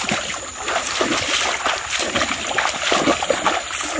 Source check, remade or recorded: recorded